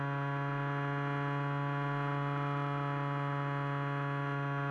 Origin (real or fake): real